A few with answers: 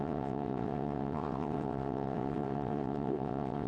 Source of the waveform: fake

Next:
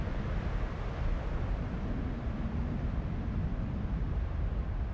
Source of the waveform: real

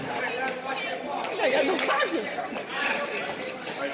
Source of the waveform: real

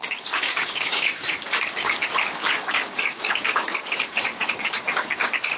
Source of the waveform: fake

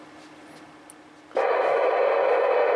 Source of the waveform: real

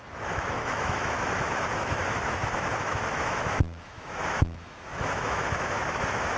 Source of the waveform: fake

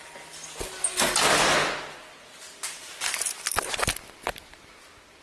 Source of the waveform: real